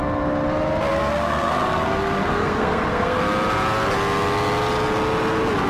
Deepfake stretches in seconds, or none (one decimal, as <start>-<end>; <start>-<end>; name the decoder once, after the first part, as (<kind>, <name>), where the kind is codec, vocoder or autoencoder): 0.9-3.2 (codec, SNAC)